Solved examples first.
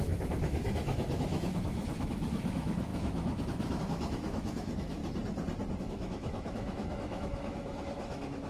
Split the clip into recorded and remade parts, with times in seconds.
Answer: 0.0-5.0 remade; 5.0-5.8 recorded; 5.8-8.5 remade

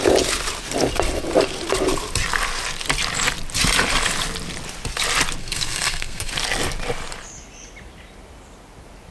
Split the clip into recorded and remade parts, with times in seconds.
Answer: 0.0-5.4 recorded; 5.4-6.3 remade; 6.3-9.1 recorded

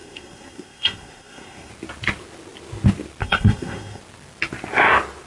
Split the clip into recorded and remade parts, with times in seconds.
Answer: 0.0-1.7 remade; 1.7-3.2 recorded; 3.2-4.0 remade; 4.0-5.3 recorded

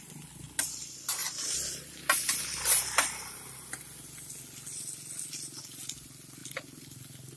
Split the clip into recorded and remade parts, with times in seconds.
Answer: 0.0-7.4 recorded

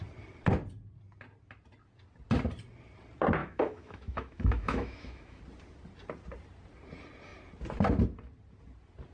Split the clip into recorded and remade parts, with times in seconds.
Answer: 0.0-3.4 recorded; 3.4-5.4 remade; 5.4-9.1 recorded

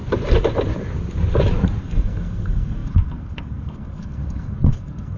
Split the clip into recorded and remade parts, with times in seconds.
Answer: 0.0-1.8 recorded; 1.8-5.2 remade